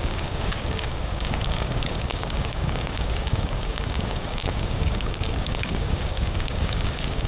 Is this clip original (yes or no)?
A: no